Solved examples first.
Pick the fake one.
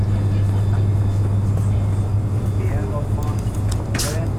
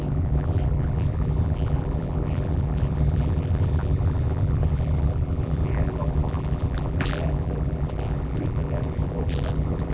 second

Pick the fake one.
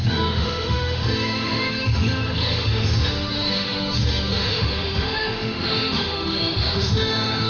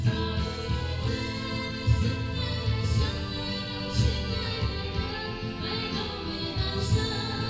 first